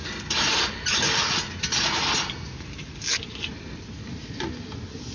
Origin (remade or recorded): recorded